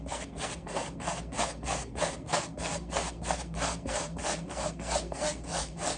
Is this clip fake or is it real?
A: fake